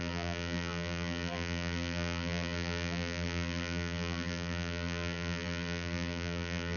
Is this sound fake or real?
fake